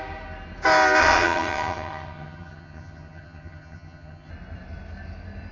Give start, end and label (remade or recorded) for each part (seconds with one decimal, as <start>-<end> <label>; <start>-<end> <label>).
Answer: 0.0-1.0 recorded; 1.0-4.3 remade; 4.3-5.5 recorded